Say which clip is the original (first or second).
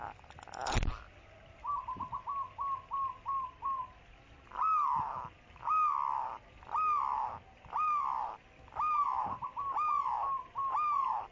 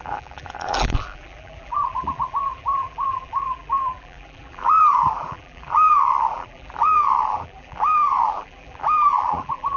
first